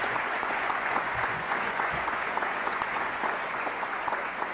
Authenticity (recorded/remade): remade